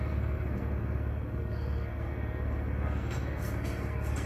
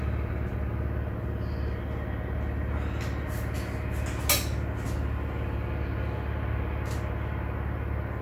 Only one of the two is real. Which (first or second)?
second